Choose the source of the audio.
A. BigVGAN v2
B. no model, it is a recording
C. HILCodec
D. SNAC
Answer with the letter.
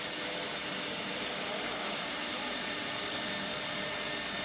A